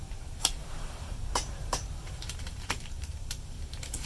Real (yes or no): no